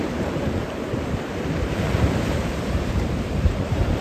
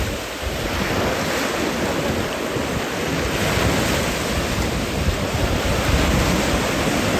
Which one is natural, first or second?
second